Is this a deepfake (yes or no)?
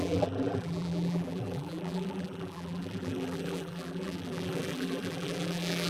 yes